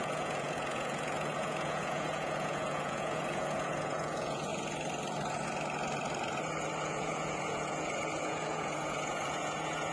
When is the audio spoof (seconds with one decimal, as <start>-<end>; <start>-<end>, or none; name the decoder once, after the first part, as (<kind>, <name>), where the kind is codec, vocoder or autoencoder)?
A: 0.0-4.5 (vocoder, Vocos); 6.8-9.9